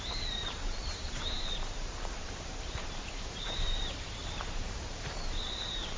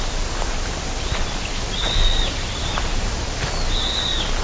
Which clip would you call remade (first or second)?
first